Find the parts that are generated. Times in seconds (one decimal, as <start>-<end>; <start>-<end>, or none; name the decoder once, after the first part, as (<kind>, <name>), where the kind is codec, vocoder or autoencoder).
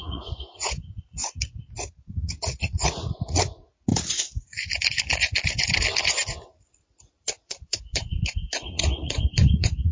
0.0-1.2 (vocoder, Vocos); 2.0-3.9; 7.0-9.9